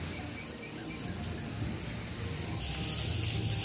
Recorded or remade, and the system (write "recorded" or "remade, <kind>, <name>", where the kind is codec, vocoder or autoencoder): recorded